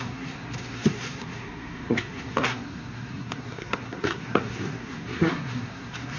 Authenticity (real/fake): fake